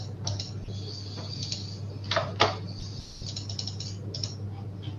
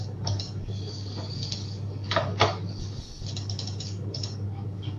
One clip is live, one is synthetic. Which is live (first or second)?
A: first